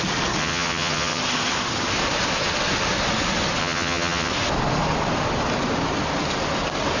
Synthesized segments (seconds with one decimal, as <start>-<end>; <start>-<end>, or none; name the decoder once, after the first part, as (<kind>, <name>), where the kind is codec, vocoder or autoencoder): 0.4-1.2 (vocoder, HiFi-GAN); 3.6-4.3